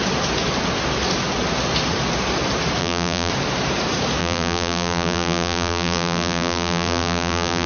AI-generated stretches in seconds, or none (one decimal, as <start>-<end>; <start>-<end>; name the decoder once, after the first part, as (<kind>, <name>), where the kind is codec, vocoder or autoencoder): 2.8-3.3 (vocoder, BigVGAN v2); 4.2-7.7

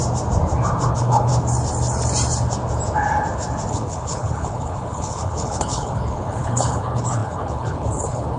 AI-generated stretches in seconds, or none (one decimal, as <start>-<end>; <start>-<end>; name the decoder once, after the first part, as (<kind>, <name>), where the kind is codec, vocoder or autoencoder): 0.9-1.3 (codec, HILCodec); 3.7-8.4

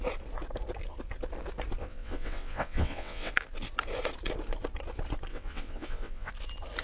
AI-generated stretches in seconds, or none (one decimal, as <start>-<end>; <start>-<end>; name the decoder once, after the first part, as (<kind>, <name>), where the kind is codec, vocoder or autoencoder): 1.8-3.3 (vocoder, WaveNeXt); 5.3-6.3

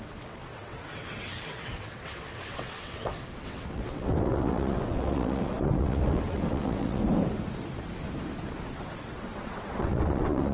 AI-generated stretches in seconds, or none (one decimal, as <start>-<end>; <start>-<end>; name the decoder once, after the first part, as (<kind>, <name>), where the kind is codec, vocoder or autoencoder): 0.0-7.0 (vocoder, WaveNeXt); 8.8-10.5

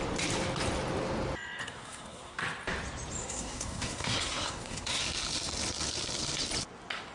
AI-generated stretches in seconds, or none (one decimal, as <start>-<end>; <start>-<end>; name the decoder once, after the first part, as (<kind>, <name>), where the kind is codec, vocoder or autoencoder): 1.6-2.4 (codec, SNAC); 3.2-5.0